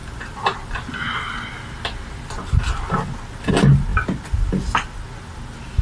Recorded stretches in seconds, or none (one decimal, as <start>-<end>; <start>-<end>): 0.0-5.8